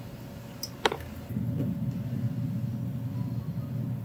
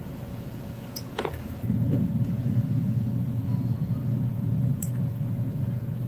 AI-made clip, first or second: second